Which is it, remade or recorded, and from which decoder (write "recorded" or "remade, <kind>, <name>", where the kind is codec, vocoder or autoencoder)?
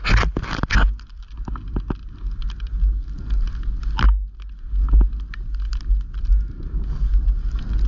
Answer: recorded